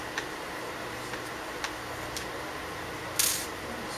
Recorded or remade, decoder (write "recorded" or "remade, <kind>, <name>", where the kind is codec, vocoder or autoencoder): recorded